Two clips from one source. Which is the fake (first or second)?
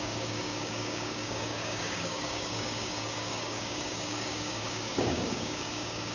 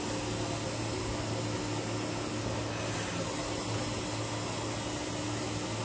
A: first